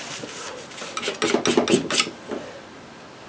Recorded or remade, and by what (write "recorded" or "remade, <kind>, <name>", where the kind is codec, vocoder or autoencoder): recorded